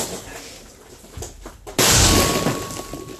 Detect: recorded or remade recorded